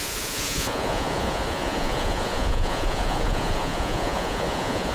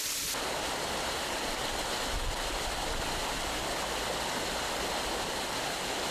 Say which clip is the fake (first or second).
first